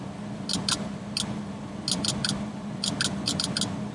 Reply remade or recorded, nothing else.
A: recorded